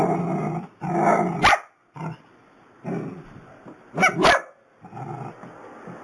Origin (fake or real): real